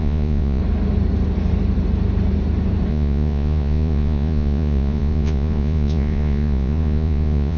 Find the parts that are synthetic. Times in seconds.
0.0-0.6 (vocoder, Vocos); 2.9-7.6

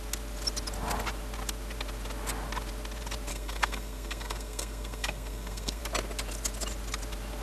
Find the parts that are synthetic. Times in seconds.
3.3-5.8 (codec, SNAC)

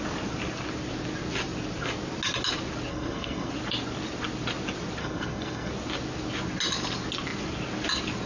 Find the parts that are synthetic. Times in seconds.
2.9-3.5 (codec, SNAC); 5.0-5.7

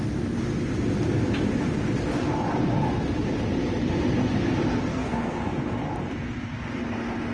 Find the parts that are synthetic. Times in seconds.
4.9-5.4 (codec, SNAC)

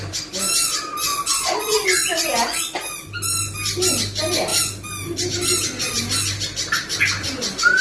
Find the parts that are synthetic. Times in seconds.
1.1-2.6 (vocoder, Vocos)

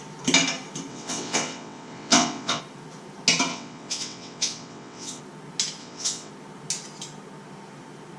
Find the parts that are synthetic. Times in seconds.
0.9-2.6 (vocoder, WaveNeXt); 3.5-5.2; 5.8-6.3

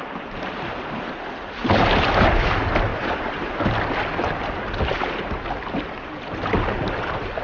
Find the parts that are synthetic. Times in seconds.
2.9-3.5 (vocoder, BigVGAN v2)